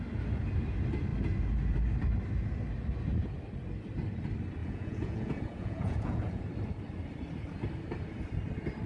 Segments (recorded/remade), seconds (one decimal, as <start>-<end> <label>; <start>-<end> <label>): 0.0-4.6 recorded; 4.6-6.4 remade; 6.4-8.9 recorded